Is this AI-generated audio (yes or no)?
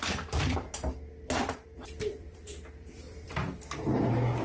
yes